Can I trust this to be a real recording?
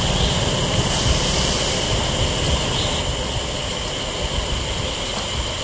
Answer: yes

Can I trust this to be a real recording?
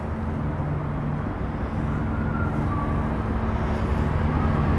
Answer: yes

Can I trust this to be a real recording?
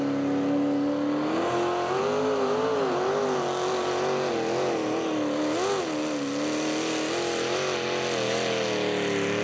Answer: yes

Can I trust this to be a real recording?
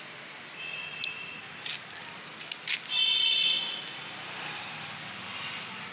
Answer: yes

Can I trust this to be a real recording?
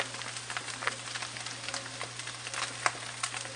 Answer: yes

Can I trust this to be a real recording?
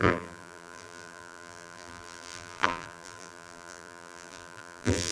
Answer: no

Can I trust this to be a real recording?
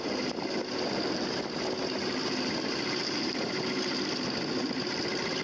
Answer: yes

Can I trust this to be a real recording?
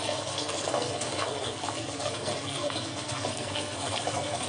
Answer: no